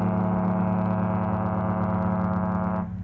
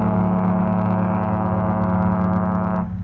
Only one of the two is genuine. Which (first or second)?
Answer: first